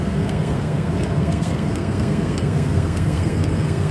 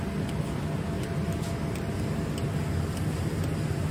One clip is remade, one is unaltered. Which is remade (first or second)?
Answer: first